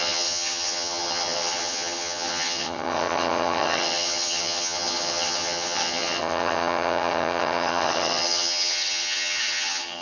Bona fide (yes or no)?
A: no